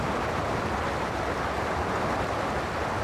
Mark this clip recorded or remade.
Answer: recorded